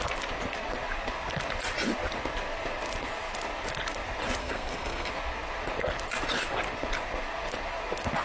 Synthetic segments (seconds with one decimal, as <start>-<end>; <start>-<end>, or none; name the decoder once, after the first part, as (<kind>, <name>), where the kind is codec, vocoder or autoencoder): 4.4-5.1 (codec, SNAC)